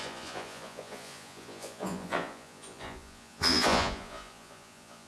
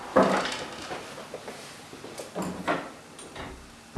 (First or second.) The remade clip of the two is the first